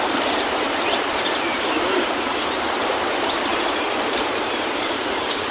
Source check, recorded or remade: remade